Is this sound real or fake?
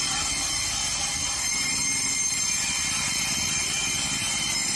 real